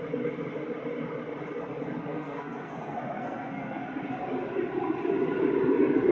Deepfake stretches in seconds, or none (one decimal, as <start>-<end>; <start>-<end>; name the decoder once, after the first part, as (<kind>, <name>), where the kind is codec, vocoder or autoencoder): 2.1-3.8 (codec, SNAC)